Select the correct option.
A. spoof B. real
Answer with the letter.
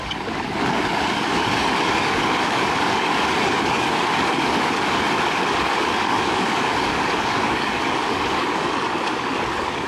A